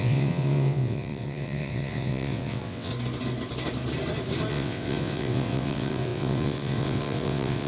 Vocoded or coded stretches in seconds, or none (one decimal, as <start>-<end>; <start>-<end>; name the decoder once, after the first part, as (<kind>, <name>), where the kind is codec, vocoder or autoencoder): 0.0-2.9 (vocoder, WaveNeXt); 4.5-7.7